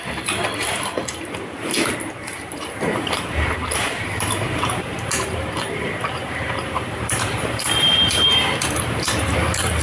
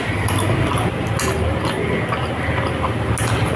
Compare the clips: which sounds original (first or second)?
second